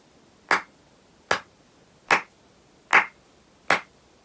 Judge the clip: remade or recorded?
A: recorded